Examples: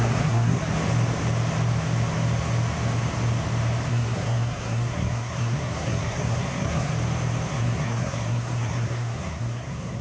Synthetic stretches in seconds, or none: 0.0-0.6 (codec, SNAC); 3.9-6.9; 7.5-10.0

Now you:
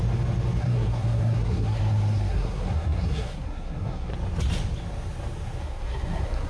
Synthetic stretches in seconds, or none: 0.6-4.1 (codec, SNAC); 5.6-6.5

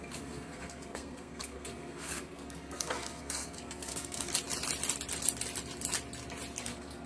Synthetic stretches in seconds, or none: 0.0-4.3 (codec, SNAC); 6.6-7.1

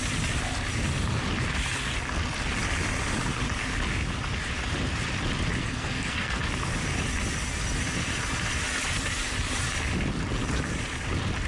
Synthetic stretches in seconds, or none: 5.6-6.4 (codec, SNAC)

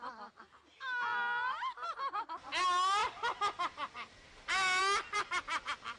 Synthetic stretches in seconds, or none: none